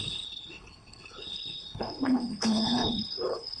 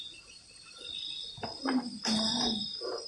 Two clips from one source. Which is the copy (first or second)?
first